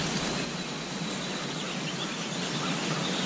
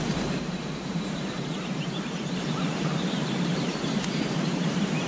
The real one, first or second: first